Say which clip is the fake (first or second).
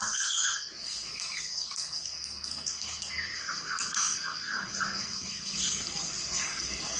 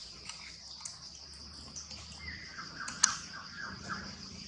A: first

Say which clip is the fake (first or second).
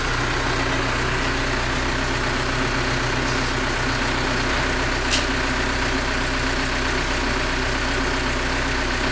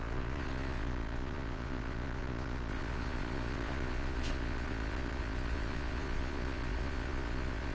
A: second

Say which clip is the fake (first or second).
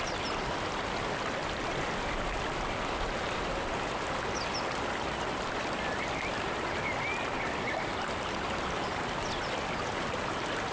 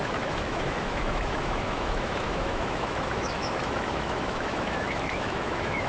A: second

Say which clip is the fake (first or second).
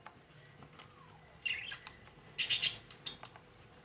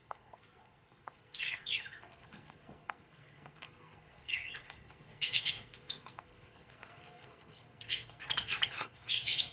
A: second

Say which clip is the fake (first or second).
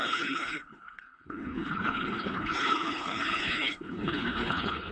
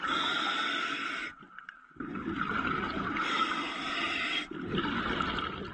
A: first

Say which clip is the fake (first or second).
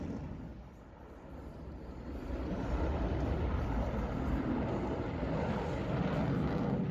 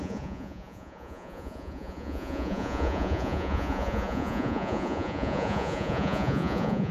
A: second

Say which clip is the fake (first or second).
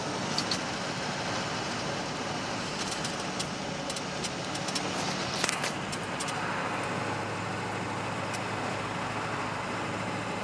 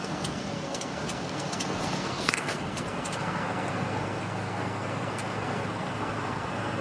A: second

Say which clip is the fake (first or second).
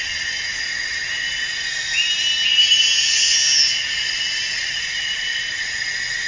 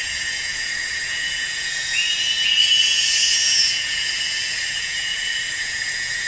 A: second